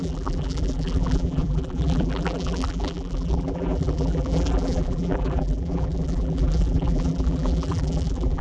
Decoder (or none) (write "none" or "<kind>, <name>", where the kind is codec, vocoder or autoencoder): vocoder, BigVGAN v2